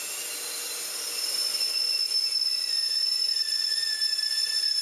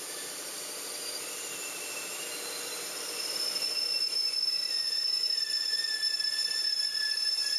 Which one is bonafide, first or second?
first